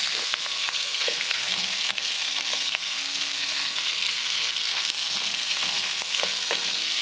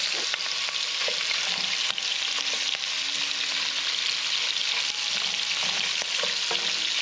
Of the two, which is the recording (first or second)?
second